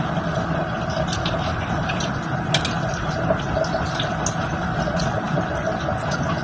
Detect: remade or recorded recorded